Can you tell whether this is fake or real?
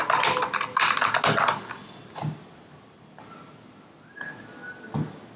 real